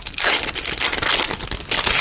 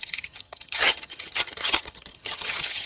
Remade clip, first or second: second